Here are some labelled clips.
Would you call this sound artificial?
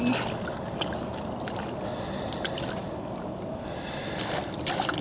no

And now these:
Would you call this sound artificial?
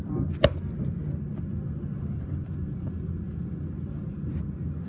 no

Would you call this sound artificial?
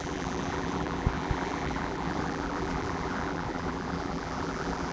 yes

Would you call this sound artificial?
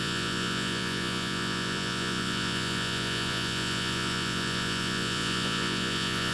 yes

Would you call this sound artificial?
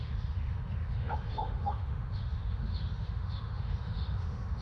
yes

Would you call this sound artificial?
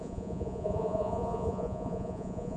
yes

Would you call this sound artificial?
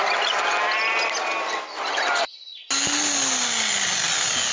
no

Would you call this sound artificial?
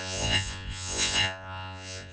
yes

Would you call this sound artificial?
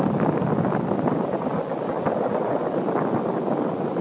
no